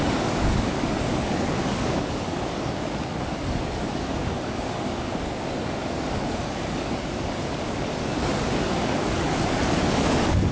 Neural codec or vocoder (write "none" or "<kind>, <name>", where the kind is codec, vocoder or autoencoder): codec, DAC